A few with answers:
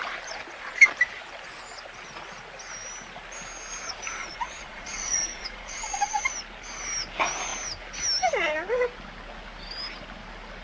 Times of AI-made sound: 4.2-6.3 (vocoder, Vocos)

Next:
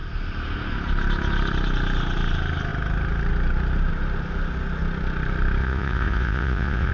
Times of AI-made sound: 5.6-6.9 (vocoder, Vocos)

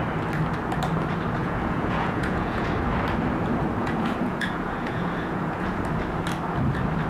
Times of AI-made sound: 1.4-2.7 (vocoder, Vocos); 3.8-5.8

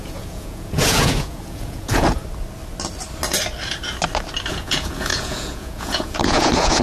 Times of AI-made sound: 0.0-2.2 (vocoder, Vocos); 4.5-6.8

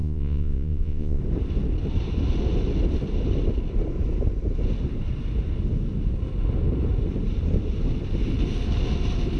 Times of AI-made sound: 0.0-1.2 (vocoder, Vocos)